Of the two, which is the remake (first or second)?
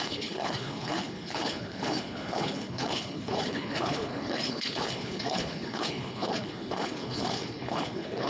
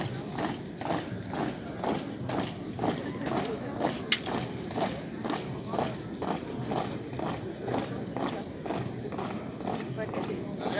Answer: first